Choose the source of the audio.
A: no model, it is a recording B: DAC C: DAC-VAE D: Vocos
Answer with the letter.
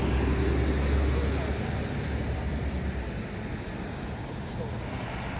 A